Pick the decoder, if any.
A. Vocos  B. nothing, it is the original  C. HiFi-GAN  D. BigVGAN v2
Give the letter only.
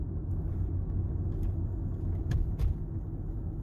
B